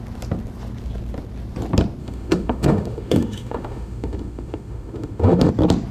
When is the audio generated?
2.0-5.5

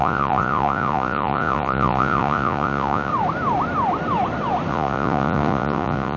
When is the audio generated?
0.0-3.1; 4.7-6.2

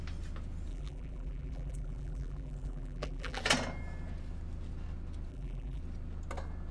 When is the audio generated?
0.7-3.4; 5.3-5.8

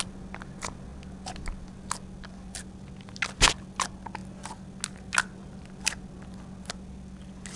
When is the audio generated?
none

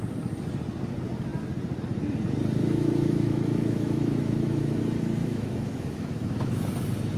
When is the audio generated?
2.6-4.8; 5.2-6.7

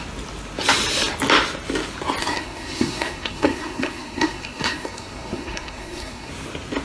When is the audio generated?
2.2-6.3

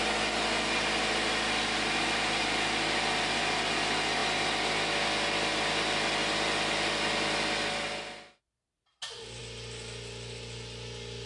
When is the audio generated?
none

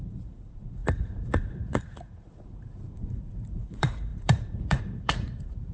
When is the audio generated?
0.0-5.7